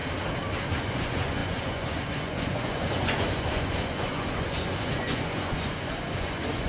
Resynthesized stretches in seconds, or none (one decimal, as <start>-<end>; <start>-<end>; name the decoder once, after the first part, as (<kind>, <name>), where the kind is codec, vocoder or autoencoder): 0.8-6.7 (vocoder, Vocos)